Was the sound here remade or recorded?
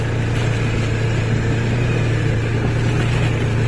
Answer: recorded